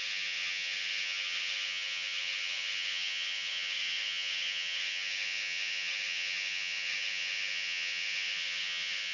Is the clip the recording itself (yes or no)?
no